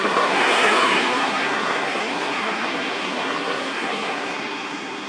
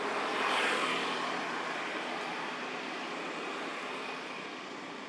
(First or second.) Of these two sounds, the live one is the second